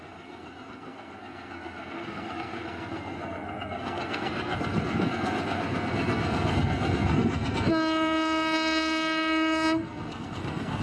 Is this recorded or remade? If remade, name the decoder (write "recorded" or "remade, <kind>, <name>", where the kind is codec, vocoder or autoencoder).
remade, codec, SNAC